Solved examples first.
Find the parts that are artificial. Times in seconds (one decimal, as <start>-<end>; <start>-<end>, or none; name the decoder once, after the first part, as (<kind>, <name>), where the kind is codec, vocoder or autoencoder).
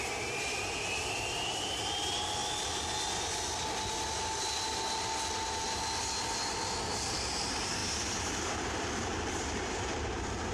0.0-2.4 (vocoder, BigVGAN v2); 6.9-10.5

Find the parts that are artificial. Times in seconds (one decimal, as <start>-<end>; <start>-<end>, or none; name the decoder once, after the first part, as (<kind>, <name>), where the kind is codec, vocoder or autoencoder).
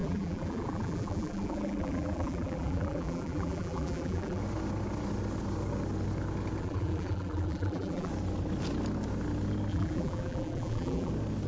0.0-4.4 (vocoder, BigVGAN v2); 6.6-8.1; 9.7-11.1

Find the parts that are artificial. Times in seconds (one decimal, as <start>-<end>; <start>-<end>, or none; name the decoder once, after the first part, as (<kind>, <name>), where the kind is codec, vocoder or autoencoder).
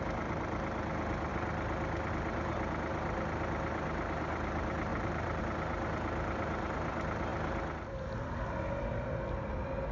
4.9-5.4 (vocoder, BigVGAN v2)